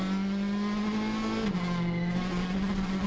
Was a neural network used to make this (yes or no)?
no